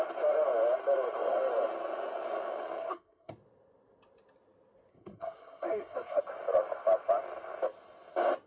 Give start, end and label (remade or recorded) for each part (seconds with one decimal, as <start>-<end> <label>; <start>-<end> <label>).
0.0-2.8 recorded; 2.8-3.3 remade; 3.3-4.9 recorded; 4.9-6.2 remade; 6.2-8.5 recorded